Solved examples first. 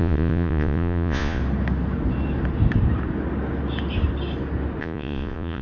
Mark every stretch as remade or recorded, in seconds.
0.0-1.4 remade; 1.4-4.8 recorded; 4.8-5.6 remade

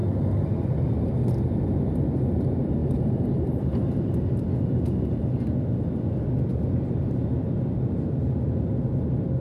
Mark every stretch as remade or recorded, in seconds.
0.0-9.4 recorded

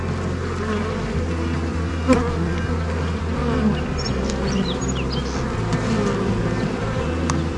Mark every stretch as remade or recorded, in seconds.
0.0-7.6 recorded

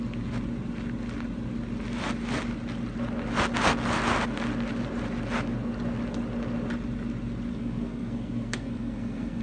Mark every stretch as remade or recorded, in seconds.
0.0-7.5 recorded; 7.5-9.4 remade

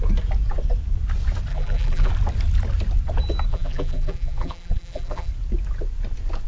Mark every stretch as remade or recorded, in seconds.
0.0-1.5 recorded; 1.5-2.1 remade; 2.1-3.5 recorded; 3.5-5.3 remade; 5.3-6.5 recorded

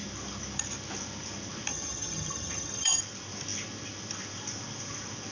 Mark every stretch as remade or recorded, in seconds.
0.0-1.7 recorded; 1.7-3.0 remade; 3.0-5.3 recorded

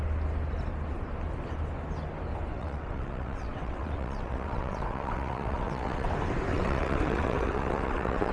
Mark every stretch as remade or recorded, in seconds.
0.0-2.5 recorded; 2.5-6.1 remade; 6.1-6.5 recorded; 6.5-8.3 remade